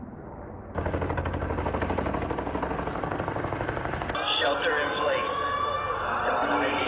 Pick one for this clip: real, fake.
real